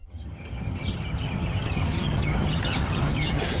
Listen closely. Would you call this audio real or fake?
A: fake